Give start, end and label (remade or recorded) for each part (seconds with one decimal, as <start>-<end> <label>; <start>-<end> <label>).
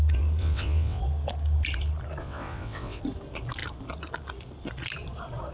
0.0-0.4 recorded; 0.4-1.0 remade; 1.0-2.2 recorded; 2.2-3.0 remade; 3.0-5.5 recorded